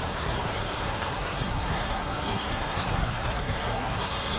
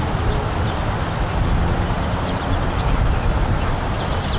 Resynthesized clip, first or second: first